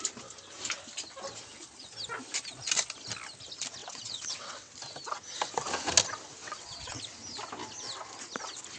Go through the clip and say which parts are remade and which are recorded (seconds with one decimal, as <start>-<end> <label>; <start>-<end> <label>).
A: 0.0-3.8 recorded; 3.8-4.7 remade; 4.7-6.4 recorded; 6.4-7.0 remade; 7.0-8.8 recorded